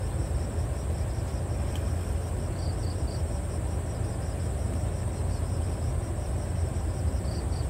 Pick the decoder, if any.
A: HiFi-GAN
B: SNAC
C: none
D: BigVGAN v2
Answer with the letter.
D